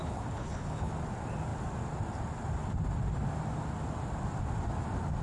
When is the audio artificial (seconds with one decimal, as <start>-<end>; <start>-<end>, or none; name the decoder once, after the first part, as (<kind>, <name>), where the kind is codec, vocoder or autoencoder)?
0.0-0.9 (codec, HILCodec)